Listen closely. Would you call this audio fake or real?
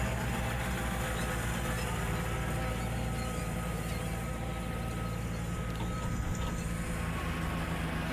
real